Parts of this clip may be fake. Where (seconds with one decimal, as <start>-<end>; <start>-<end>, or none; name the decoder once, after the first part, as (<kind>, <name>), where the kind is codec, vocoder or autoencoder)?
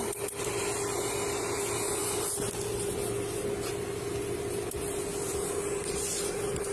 none